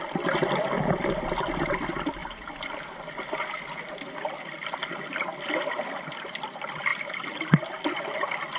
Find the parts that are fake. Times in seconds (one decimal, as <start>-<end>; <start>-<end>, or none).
none